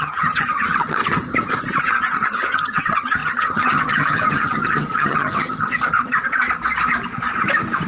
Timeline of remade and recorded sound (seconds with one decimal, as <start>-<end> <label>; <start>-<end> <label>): 0.0-1.0 remade; 1.0-1.8 recorded; 1.8-5.7 remade; 5.7-7.9 recorded